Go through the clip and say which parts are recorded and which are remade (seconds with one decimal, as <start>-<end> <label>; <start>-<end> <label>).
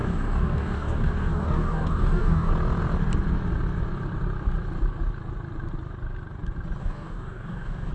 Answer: 0.0-2.5 remade; 2.5-6.8 recorded; 6.8-7.9 remade